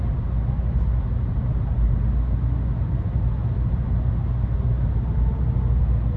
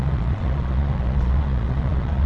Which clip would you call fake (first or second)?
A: second